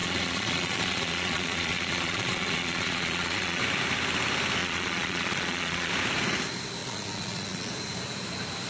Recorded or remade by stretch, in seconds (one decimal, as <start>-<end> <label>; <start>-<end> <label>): 0.0-3.6 remade; 3.6-4.6 recorded; 4.6-5.9 remade; 5.9-6.8 recorded; 6.8-7.7 remade; 7.7-8.7 recorded